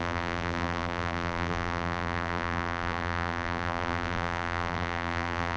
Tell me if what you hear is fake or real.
fake